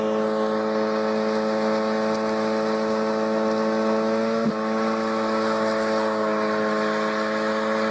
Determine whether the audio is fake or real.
real